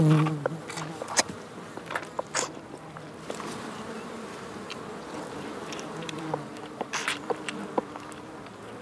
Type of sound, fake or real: real